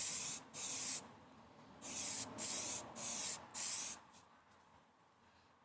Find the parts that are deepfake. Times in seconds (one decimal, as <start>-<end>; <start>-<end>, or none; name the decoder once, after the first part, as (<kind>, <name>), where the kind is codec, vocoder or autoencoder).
none